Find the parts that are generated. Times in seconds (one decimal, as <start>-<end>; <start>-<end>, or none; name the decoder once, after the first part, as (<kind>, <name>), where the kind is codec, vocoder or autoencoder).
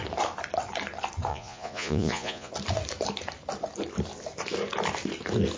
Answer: 1.3-2.5 (vocoder, Vocos)